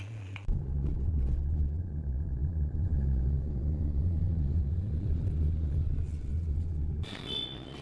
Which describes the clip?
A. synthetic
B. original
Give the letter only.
A